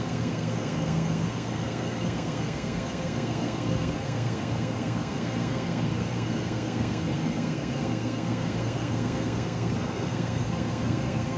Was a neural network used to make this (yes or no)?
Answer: yes